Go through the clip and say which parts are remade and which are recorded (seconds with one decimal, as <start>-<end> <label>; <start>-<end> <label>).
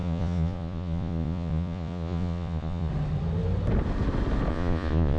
0.0-2.9 remade; 2.9-4.5 recorded; 4.5-5.2 remade